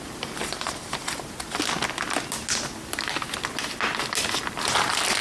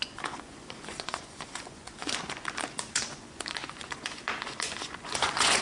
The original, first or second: first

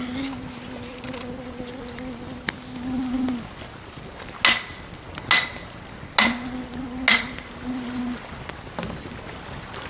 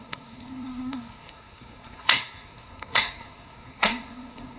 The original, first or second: first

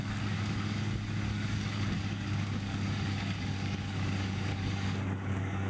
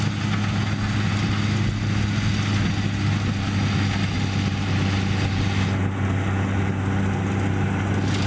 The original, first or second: second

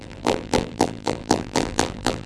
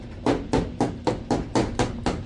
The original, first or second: second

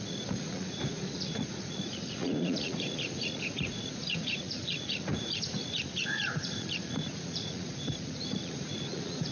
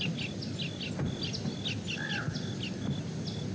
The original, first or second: second